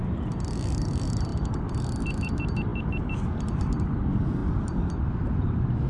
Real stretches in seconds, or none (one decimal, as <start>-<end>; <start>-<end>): 0.0-1.3; 2.0-4.4; 5.0-5.9